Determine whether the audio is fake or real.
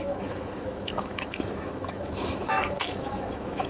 fake